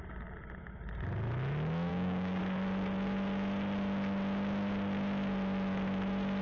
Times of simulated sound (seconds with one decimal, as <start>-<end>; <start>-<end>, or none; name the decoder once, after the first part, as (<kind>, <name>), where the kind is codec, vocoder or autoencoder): 1.9-2.4 (codec, DAC)